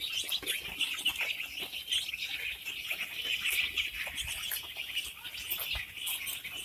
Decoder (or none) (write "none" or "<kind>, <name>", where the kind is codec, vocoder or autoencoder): none